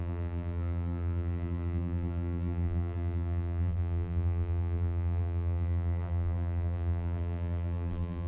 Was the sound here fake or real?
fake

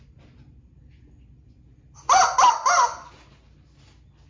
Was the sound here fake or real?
real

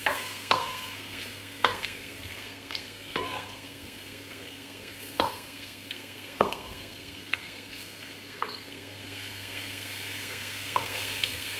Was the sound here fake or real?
fake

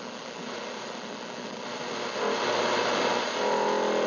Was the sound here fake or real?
real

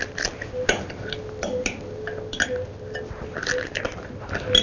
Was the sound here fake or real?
real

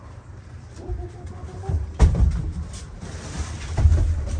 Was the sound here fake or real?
real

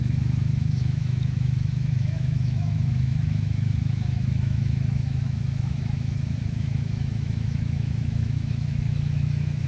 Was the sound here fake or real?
fake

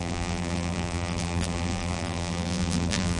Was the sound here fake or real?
fake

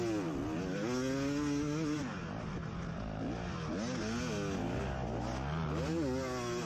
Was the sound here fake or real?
real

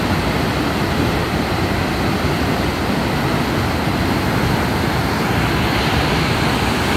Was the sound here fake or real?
real